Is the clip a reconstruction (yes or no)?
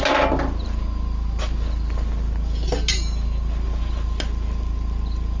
no